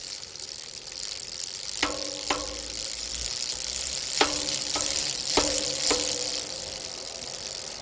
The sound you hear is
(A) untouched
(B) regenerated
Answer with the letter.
A